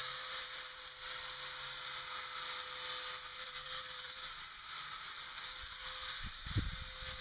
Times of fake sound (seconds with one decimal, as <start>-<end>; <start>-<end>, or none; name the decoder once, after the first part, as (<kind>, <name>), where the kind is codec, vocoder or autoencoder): 0.0-0.8 (vocoder, BigVGAN v2); 3.3-5.0